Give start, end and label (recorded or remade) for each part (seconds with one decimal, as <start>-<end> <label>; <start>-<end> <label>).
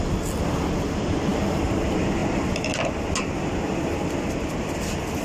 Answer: 0.0-5.2 recorded